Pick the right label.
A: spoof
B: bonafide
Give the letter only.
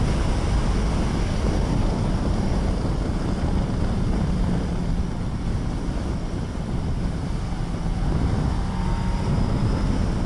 B